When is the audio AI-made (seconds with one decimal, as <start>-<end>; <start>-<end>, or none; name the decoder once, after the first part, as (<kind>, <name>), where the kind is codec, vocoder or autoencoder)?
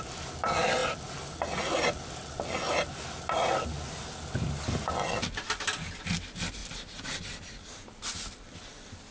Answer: 6.6-7.7 (vocoder, BigVGAN v2)